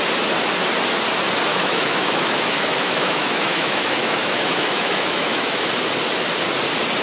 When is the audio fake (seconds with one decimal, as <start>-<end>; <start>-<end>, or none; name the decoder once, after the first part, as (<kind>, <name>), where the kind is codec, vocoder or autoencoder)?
1.5-5.7 (autoencoder, DAC-VAE)